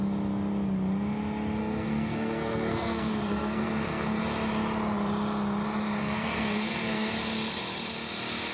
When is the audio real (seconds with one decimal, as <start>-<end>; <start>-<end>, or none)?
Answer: 0.0-1.6; 4.2-6.0; 7.1-8.5